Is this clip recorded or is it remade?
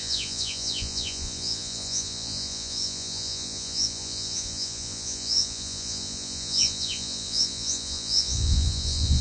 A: remade